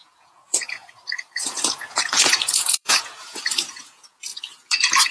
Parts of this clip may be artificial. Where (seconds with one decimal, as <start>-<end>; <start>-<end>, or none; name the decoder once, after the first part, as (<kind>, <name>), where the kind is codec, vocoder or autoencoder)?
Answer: 0.0-5.1 (vocoder, Vocos)